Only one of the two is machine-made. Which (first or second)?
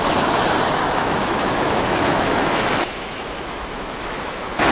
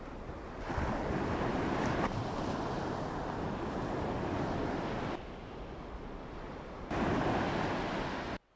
first